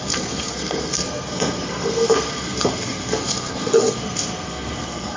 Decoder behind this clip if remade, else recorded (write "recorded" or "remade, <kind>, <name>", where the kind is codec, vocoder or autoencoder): remade, codec, SNAC